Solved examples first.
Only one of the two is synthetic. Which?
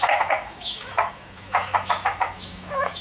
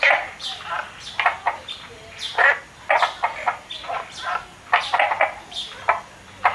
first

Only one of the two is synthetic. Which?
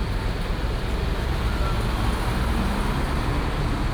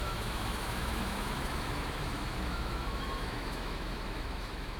second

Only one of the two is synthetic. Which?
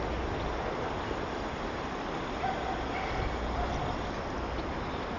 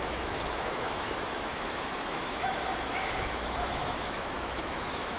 second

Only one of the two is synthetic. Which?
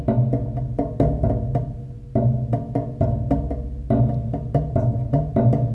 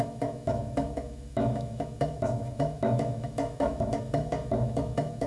second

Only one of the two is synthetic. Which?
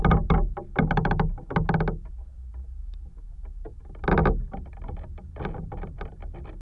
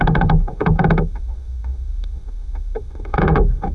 second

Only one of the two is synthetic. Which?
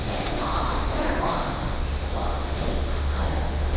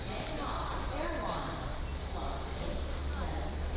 first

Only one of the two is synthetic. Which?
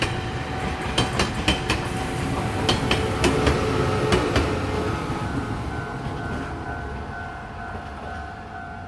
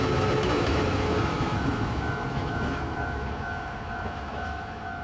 second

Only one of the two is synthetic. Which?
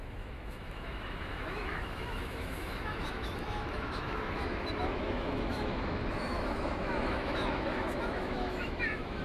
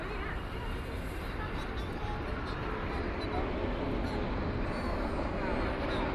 first